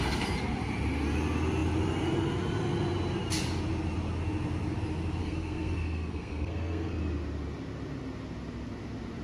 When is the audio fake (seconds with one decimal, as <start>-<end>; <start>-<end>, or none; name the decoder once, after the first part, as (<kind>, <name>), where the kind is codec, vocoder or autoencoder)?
5.2-7.0 (codec, SNAC)